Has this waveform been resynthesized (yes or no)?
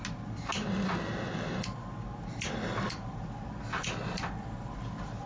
no